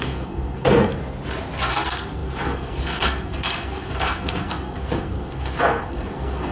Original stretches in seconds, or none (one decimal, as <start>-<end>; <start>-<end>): 1.0-1.7